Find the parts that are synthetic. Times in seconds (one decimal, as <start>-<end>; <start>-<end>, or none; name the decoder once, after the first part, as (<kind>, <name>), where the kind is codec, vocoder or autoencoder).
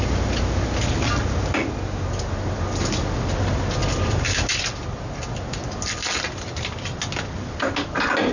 3.8-4.5 (vocoder, BigVGAN v2)